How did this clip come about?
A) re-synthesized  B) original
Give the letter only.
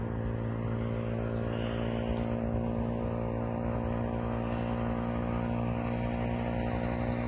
B